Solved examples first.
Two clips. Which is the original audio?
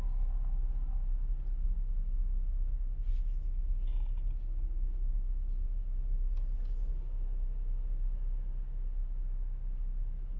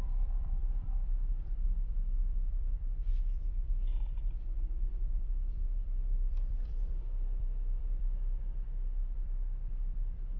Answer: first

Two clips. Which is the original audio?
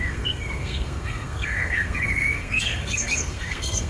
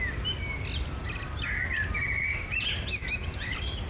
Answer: second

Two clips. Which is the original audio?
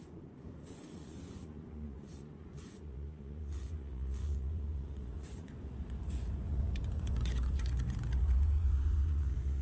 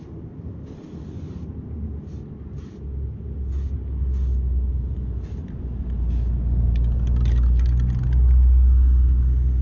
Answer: second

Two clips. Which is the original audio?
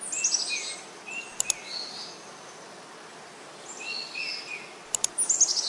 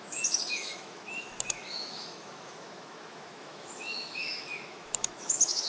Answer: first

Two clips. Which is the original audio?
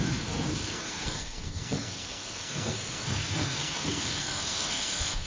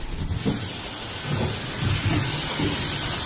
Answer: second